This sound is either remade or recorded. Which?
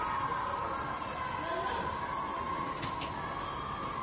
recorded